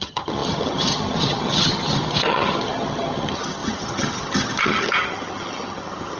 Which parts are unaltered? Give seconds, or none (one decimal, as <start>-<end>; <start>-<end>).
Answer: none